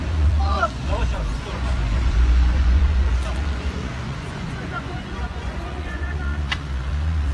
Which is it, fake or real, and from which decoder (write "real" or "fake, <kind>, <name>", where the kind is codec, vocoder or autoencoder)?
fake, vocoder, Vocos